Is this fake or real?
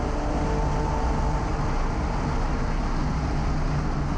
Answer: real